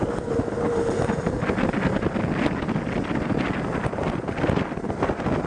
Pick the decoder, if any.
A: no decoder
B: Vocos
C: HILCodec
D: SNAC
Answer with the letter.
A